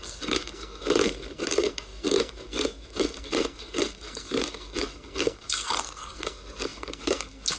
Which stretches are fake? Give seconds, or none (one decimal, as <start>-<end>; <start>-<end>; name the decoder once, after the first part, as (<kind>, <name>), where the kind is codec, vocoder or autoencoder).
0.0-7.6 (codec, SNAC)